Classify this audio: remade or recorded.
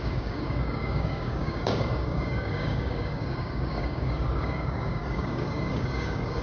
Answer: remade